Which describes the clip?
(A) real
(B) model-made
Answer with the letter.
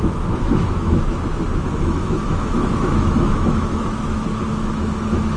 B